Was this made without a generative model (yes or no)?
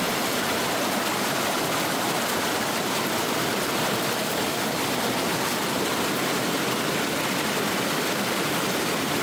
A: yes